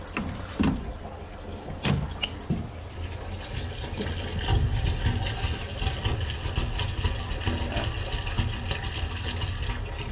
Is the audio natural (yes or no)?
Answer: yes